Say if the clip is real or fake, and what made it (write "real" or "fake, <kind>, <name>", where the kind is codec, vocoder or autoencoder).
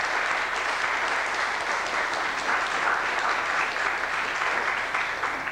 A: real